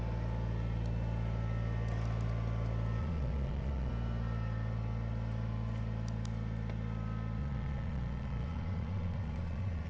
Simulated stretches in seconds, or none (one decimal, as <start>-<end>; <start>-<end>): 3.0-3.9; 7.4-9.9